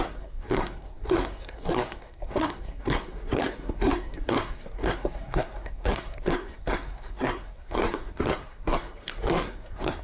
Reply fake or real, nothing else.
fake